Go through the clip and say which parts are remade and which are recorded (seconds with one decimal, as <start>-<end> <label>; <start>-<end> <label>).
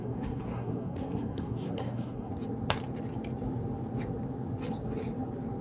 0.0-2.3 remade; 2.3-5.6 recorded